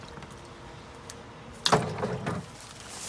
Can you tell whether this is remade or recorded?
recorded